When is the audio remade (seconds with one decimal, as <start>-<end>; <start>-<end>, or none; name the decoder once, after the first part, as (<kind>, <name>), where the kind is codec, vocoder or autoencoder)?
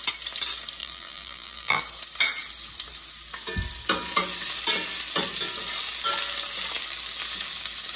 0.8-1.8 (vocoder, BigVGAN v2)